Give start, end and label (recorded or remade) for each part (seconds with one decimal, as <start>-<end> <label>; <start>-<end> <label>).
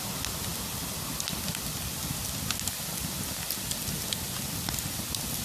0.0-5.4 recorded